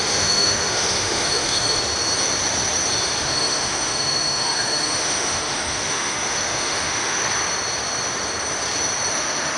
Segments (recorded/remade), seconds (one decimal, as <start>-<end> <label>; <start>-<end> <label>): 0.0-1.8 remade; 1.8-3.2 recorded; 3.2-7.2 remade; 7.2-9.1 recorded; 9.1-9.6 remade